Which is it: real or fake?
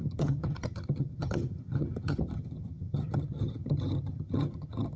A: fake